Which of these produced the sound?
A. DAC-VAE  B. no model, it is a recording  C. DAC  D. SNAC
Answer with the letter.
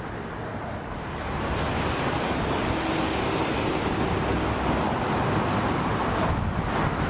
B